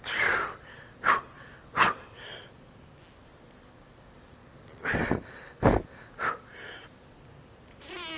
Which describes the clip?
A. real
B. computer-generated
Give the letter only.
A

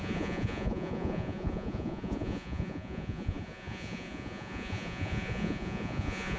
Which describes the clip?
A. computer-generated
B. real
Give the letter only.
A